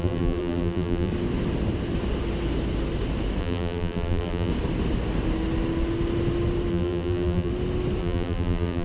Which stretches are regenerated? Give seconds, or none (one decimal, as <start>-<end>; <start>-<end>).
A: 0.0-1.1; 3.4-4.5; 6.7-7.5; 8.0-8.8

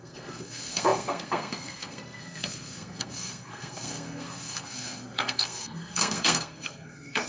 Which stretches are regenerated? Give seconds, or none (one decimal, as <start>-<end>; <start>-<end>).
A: 0.0-7.3

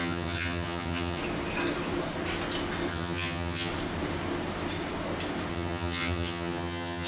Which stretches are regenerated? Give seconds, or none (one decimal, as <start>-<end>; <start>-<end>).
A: 0.0-1.2; 2.9-3.7; 5.5-7.1

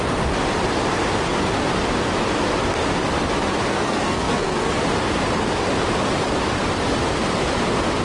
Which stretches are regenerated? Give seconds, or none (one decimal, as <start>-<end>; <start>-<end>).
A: 3.7-4.7

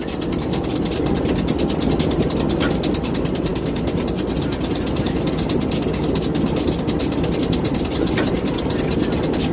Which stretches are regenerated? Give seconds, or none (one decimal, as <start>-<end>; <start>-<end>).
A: none